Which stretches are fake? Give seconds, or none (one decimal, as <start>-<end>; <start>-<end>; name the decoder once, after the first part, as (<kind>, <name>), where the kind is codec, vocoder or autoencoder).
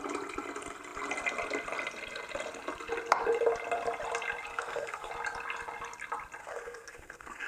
4.5-5.1 (codec, SNAC); 6.4-7.5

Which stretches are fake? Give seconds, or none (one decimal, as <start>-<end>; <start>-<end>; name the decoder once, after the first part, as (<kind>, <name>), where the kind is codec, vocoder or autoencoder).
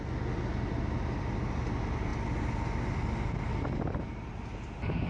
none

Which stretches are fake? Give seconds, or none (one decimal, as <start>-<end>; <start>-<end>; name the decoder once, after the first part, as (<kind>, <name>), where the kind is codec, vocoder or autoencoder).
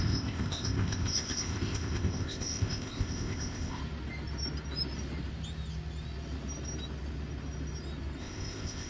0.0-3.8 (codec, ZipCodec); 8.2-8.9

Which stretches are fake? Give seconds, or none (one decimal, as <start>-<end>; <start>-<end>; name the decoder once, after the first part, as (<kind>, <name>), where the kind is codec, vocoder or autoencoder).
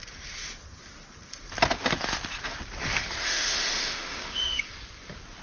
3.2-4.7 (autoencoder, DAC-VAE)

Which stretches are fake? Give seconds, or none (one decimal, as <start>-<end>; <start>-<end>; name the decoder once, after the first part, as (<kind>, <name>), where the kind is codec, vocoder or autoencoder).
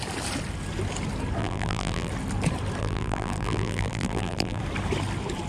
1.4-2.1 (vocoder, BigVGAN v2); 2.8-4.6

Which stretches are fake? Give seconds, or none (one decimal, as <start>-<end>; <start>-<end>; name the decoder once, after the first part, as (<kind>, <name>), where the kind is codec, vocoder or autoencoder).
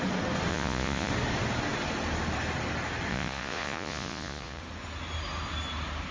0.5-1.1 (vocoder, Vocos); 3.1-4.6